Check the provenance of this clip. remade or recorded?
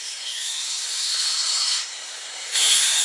remade